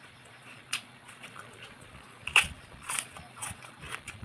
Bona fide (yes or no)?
no